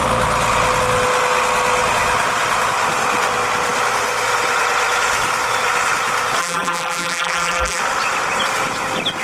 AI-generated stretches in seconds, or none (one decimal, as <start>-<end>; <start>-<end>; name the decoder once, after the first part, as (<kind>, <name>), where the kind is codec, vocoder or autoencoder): 6.4-7.8 (vocoder, BigVGAN v2)